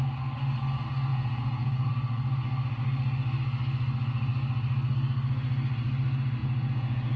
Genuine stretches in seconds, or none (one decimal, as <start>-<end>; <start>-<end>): 0.0-1.1; 1.9-6.4